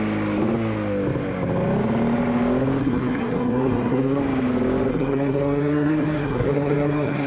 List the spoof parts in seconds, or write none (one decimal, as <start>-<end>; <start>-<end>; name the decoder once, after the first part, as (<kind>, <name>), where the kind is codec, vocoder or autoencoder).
2.8-4.2 (codec, SNAC); 4.9-7.3